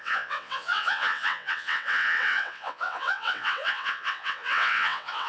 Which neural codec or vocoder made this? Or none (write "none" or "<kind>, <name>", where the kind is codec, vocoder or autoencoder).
vocoder, WaveNeXt